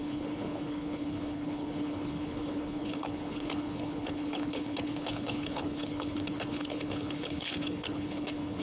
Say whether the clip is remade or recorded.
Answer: remade